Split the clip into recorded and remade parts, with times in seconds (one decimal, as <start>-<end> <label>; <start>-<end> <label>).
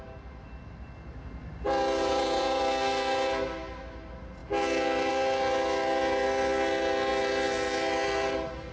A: 0.0-2.0 recorded; 2.0-2.6 remade; 2.6-8.7 recorded